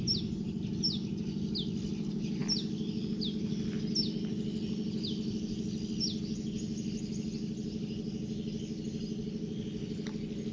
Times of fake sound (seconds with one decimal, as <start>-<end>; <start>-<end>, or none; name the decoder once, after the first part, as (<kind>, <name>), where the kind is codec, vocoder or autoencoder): none